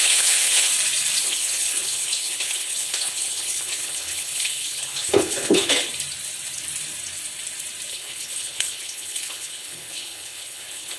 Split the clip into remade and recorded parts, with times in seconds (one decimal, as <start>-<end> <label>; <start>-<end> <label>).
0.0-0.7 remade; 0.7-1.2 recorded; 1.2-5.9 remade; 5.9-7.9 recorded; 7.9-11.0 remade